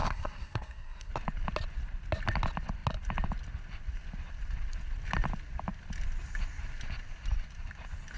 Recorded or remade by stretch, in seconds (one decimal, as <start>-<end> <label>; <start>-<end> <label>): 0.0-1.1 remade; 1.1-8.2 recorded